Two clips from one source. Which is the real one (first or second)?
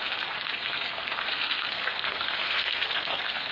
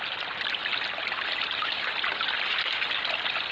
second